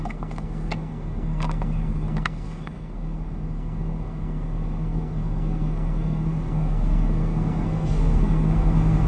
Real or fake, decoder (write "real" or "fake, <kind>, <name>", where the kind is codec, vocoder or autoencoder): fake, codec, SNAC